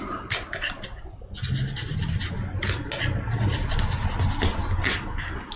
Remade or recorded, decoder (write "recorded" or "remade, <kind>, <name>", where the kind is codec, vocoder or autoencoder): recorded